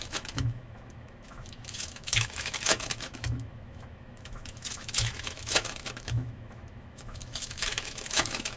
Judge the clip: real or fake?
fake